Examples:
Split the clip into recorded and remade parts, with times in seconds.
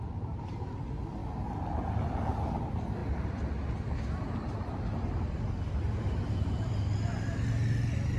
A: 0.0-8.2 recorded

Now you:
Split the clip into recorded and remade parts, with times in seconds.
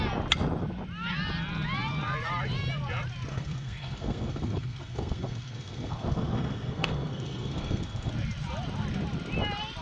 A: 0.0-3.3 recorded; 3.3-8.1 remade; 8.1-9.8 recorded